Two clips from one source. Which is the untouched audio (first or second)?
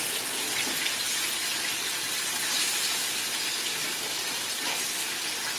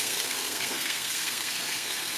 first